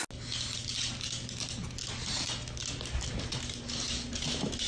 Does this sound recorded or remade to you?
recorded